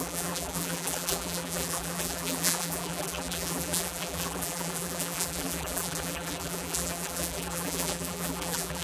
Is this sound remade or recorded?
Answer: remade